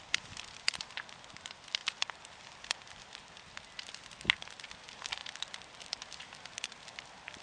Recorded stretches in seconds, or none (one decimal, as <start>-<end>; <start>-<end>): 0.0-7.4